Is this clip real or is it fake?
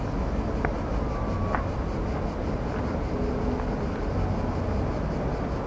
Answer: real